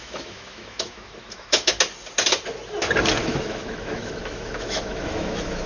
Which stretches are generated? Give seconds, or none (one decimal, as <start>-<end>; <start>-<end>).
0.0-1.7; 3.2-5.7